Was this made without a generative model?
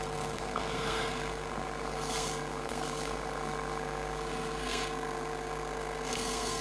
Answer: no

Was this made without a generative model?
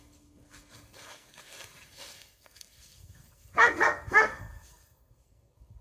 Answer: no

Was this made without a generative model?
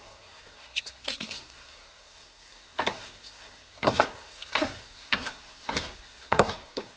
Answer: no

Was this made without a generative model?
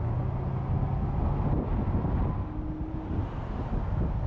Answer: yes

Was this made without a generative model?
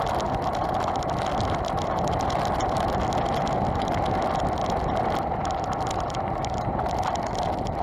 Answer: yes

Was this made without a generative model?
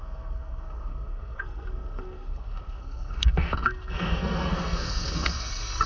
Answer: no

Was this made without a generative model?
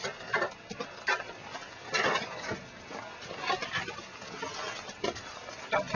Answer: yes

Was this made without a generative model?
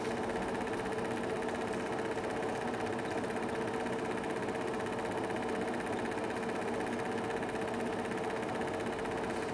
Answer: yes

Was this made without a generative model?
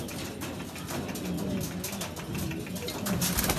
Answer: yes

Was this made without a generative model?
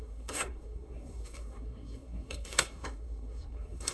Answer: no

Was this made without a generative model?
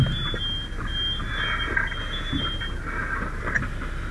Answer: yes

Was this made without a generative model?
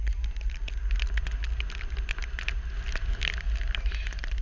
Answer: yes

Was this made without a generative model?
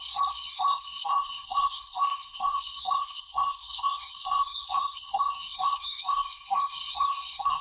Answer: no